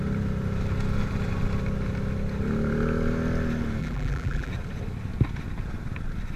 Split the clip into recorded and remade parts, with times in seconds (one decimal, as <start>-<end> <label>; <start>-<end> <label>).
0.0-3.8 recorded; 3.8-4.5 remade; 4.5-6.4 recorded